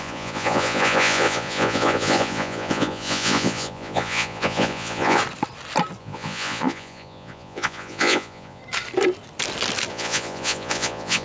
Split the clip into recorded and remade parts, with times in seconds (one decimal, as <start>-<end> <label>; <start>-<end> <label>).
0.0-5.2 remade; 5.2-6.0 recorded; 6.0-8.6 remade; 8.6-9.9 recorded; 9.9-11.2 remade